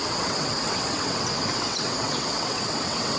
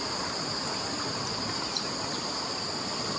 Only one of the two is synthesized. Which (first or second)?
first